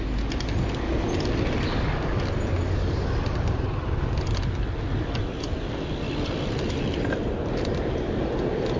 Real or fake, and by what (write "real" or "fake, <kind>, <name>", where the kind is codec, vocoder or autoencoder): real